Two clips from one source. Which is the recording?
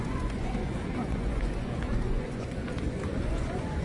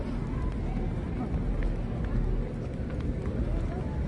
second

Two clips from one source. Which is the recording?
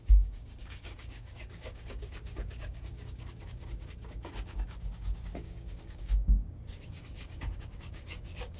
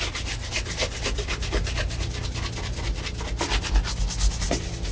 second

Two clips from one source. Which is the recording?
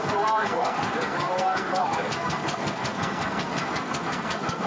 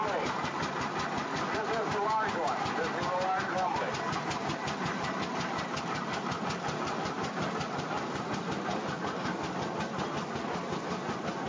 second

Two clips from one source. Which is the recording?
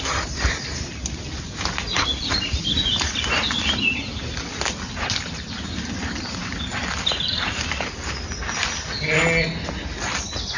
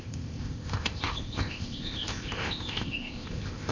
first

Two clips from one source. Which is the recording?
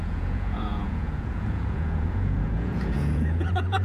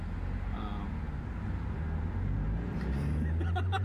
second